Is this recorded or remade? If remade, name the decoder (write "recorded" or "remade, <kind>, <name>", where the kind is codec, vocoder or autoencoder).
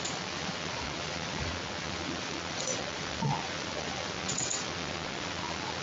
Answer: remade, vocoder, WaveNeXt